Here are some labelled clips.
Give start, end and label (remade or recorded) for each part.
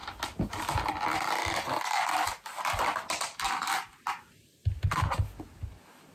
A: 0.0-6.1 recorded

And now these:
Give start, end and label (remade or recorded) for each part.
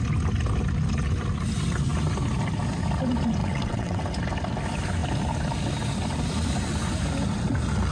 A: 0.0-3.4 recorded; 3.4-4.0 remade; 4.0-7.9 recorded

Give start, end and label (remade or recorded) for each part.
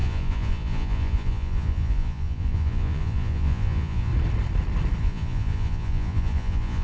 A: 0.0-4.1 remade; 4.1-5.0 recorded; 5.0-6.8 remade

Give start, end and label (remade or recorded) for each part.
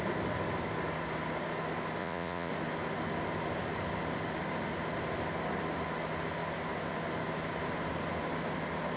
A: 0.0-2.0 recorded; 2.0-2.5 remade; 2.5-9.0 recorded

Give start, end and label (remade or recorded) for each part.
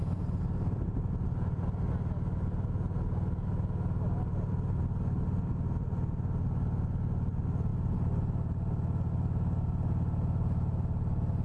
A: 0.0-11.4 recorded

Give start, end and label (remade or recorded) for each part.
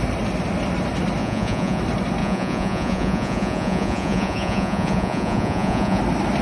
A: 0.0-1.2 recorded; 1.2-1.8 remade; 1.8-2.2 recorded; 2.2-6.0 remade; 6.0-6.4 recorded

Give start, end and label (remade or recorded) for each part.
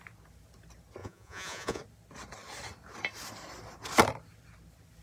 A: 0.0-1.0 recorded; 1.0-1.8 remade; 1.8-5.0 recorded